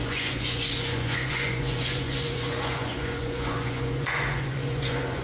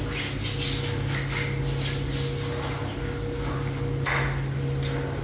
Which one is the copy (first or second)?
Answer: first